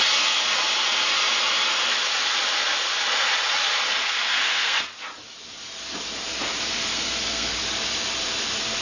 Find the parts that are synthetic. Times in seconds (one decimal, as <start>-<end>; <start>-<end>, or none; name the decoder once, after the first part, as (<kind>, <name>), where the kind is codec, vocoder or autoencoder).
4.0-4.8 (codec, SNAC); 6.9-7.5

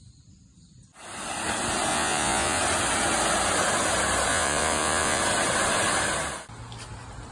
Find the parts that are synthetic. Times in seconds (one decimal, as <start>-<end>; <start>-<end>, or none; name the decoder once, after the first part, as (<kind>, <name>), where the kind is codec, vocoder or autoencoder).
1.9-2.6 (vocoder, Vocos); 4.3-5.2

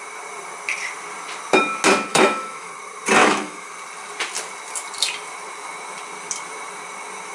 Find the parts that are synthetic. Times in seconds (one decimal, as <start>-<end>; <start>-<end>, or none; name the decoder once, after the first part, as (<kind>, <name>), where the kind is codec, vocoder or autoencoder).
2.1-2.7 (autoencoder, DAC-VAE); 3.2-3.7

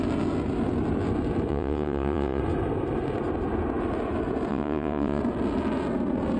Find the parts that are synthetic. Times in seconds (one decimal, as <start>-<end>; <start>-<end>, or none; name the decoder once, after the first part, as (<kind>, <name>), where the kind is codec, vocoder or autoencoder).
1.5-2.4 (vocoder, WaveNeXt); 4.5-5.2

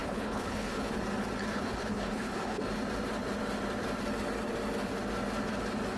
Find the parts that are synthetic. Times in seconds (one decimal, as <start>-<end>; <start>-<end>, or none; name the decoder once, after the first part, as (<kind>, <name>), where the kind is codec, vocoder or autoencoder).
0.0-1.0 (codec, HILCodec); 1.5-2.6